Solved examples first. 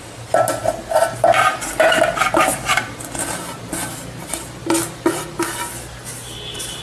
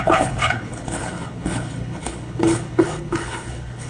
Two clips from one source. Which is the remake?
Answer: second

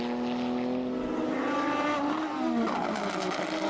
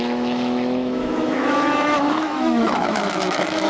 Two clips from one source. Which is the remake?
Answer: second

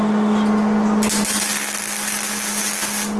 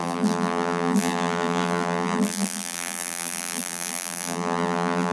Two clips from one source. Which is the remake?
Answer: second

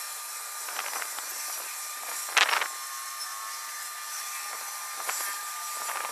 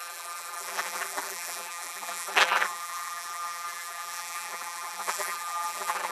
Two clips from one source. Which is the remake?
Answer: second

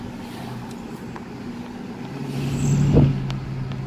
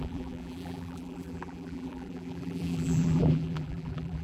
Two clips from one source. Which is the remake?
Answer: second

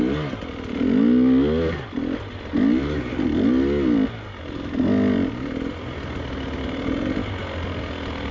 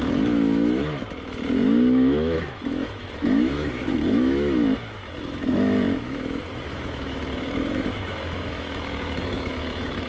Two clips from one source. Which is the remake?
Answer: second